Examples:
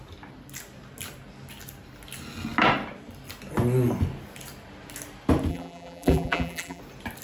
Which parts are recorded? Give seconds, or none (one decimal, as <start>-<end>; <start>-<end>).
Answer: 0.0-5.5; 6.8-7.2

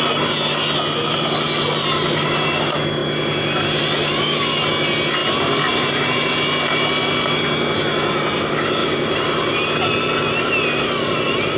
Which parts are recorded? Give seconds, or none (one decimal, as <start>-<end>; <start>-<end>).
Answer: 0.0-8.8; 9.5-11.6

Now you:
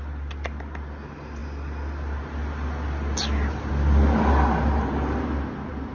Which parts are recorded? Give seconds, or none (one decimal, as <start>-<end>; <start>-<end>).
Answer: 0.0-5.9

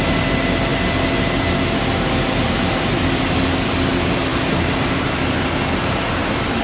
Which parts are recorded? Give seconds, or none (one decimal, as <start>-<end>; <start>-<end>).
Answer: 0.0-6.6

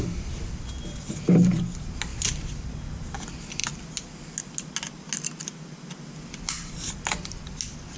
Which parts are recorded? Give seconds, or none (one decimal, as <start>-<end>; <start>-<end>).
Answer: 0.0-2.1; 2.7-8.0